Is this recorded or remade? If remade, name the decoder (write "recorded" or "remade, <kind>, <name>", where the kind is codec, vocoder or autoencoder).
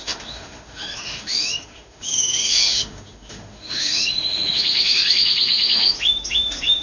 remade, autoencoder, DAC-VAE